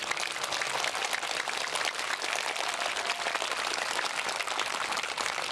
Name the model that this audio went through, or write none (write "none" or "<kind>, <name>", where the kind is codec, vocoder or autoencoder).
none